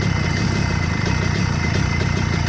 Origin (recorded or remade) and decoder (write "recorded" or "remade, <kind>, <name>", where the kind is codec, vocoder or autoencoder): recorded